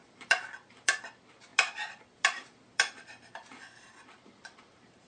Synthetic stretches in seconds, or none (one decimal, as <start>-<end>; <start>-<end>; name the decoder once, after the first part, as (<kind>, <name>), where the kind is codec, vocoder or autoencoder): 0.0-5.1 (vocoder, BigVGAN v2)